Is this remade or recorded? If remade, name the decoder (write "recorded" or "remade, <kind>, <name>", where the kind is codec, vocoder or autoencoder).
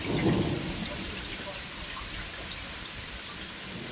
recorded